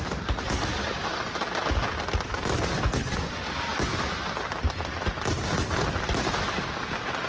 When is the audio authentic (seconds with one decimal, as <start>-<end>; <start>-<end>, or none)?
0.0-7.3